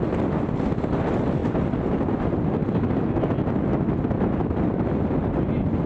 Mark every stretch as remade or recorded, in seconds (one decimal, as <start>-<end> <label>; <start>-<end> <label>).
0.0-5.9 recorded